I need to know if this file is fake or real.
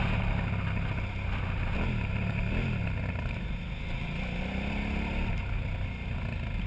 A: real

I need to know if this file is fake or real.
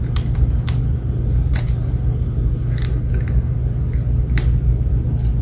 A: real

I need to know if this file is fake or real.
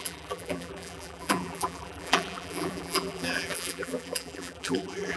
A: fake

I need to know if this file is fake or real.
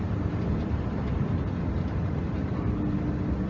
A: real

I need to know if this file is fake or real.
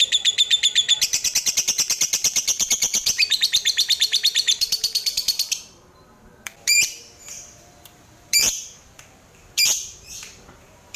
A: fake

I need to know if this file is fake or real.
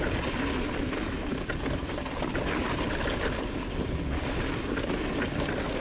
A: real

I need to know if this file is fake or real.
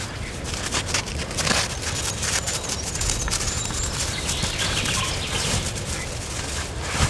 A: real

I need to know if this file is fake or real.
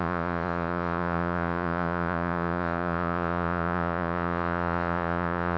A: fake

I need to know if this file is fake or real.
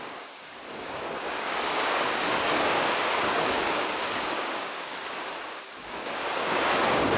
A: fake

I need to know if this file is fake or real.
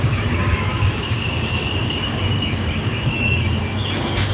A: fake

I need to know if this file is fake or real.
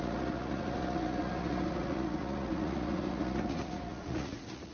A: fake